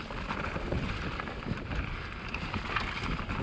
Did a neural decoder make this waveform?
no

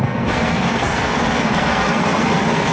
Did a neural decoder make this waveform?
yes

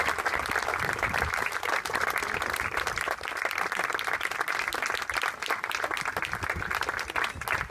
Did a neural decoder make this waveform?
no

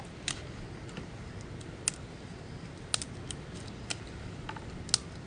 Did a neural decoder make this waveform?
no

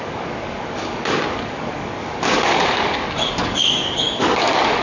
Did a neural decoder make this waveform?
yes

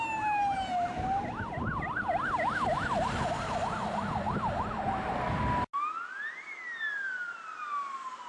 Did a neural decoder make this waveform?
no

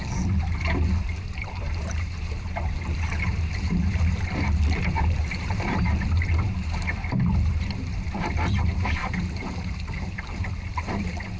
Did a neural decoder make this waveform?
yes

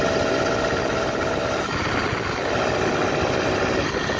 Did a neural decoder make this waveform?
no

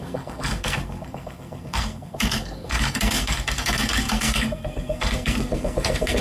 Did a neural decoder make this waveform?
yes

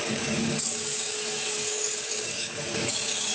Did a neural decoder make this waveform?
yes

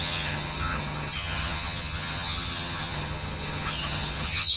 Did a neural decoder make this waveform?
yes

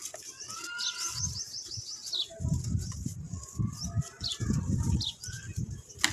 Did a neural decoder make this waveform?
no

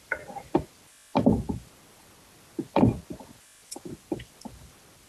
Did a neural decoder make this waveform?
no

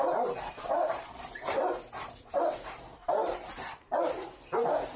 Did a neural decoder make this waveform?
yes